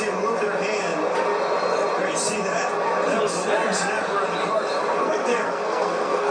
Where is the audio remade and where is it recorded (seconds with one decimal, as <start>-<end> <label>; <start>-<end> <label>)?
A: 0.0-5.0 recorded; 5.0-6.3 remade